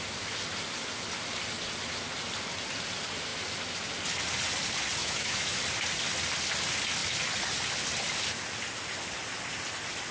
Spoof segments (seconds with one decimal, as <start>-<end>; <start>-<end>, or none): 5.0-5.6